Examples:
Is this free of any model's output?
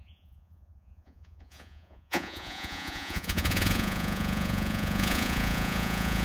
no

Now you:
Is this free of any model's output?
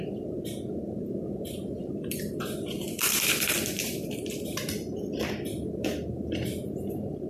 no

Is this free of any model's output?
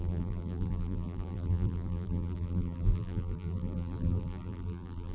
no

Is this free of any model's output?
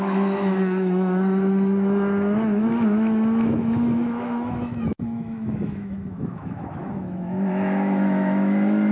no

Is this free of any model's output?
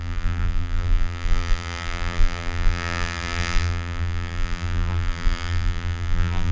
no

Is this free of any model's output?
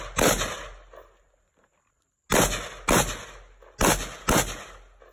yes